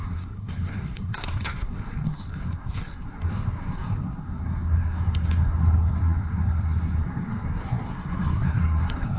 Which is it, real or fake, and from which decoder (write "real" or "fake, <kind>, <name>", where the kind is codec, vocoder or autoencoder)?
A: fake, codec, SNAC